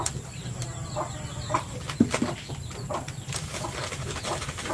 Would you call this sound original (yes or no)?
yes